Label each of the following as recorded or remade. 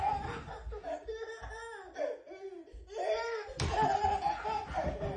recorded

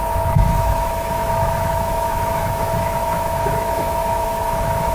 remade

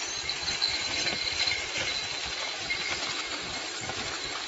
recorded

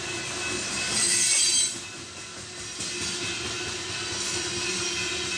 recorded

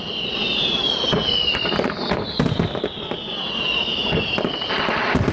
recorded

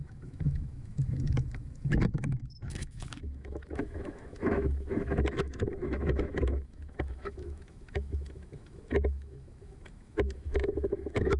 remade